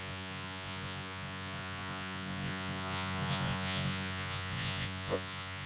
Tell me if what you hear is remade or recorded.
remade